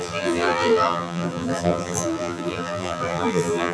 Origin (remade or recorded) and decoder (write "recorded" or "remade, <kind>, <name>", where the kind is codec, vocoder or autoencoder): remade, vocoder, BigVGAN v2